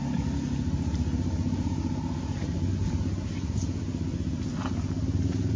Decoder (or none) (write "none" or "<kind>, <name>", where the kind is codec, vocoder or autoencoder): none